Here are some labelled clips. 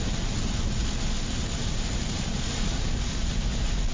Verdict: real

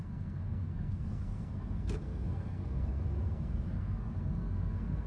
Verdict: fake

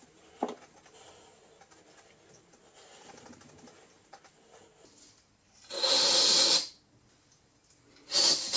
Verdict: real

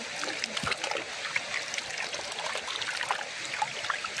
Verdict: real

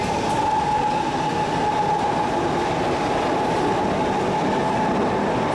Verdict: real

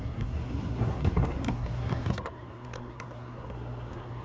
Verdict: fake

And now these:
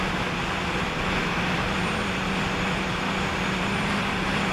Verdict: real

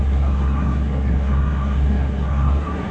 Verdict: fake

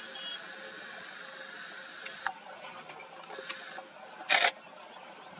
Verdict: real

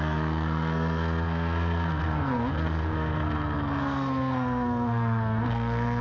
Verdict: fake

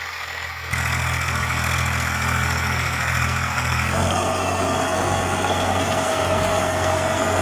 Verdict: fake